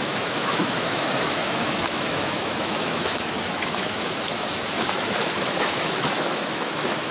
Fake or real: fake